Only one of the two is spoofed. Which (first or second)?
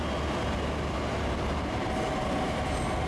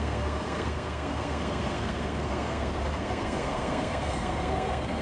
second